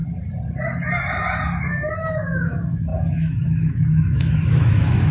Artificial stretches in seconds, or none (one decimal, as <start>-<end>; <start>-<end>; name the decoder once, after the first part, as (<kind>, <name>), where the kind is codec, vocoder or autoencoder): 2.0-5.1 (autoencoder, DAC-VAE)